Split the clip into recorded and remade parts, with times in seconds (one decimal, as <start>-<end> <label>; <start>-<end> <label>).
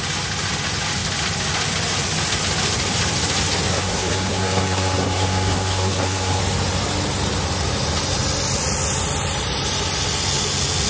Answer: 0.0-3.7 recorded; 3.7-6.4 remade; 6.4-10.9 recorded